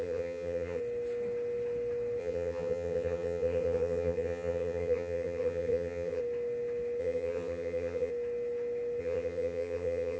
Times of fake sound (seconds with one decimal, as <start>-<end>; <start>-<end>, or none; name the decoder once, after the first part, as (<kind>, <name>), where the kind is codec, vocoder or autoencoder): 0.0-0.8 (vocoder, HiFi-GAN); 2.2-6.2; 7.0-8.1; 9.0-10.2